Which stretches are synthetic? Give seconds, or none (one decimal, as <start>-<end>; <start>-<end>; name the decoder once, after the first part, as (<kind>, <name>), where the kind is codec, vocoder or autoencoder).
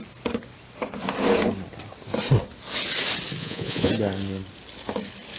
3.4-3.9 (vocoder, Vocos)